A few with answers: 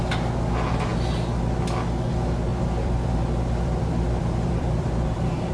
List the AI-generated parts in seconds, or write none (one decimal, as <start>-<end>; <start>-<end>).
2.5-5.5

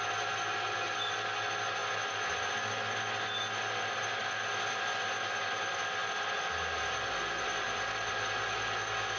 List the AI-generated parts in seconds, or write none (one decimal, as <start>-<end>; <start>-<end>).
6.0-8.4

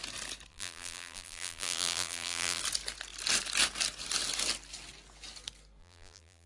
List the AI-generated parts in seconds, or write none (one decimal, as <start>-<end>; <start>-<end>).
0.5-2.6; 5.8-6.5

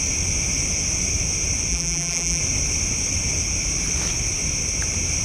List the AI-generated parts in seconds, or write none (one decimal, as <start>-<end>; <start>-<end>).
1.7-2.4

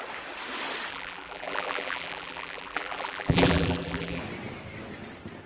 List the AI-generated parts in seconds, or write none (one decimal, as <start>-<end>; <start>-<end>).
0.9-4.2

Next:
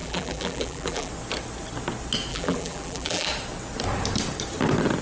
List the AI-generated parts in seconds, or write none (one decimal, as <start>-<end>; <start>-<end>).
0.0-1.1; 2.3-3.3

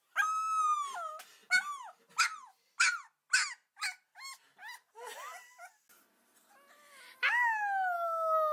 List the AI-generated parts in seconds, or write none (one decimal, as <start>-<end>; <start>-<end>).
none